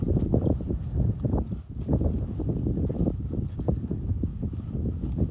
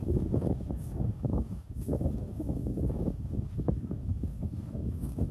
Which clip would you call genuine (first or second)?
first